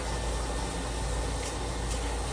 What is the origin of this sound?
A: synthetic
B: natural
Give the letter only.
B